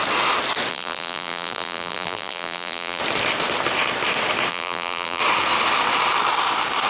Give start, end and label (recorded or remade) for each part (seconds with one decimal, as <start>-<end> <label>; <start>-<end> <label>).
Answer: 0.0-0.7 recorded; 0.7-3.0 remade; 3.0-4.5 recorded; 4.5-5.2 remade; 5.2-6.9 recorded